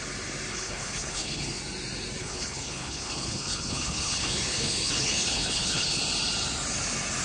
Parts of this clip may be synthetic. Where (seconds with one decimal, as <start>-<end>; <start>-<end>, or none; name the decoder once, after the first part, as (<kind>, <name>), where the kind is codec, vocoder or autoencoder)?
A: 0.5-1.6 (codec, HILCodec); 2.2-6.0